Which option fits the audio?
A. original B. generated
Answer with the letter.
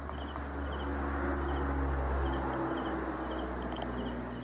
A